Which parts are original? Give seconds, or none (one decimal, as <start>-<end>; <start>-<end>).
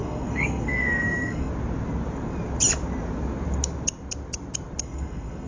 1.5-4.8